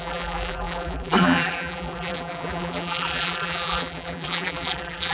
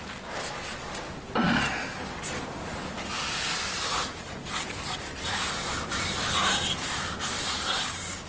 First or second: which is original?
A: second